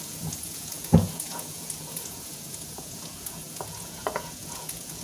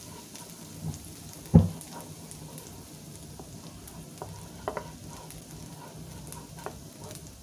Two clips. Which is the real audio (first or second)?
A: second